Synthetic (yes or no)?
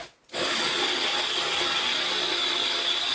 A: no